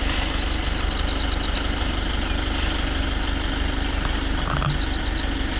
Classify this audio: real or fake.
real